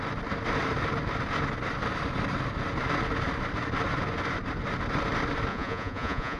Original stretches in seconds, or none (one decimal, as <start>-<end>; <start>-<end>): 0.0-5.5